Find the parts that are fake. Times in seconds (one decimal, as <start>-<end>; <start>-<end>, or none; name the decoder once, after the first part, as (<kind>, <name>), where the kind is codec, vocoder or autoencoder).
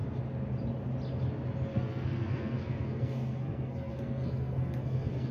1.7-5.3 (codec, SNAC)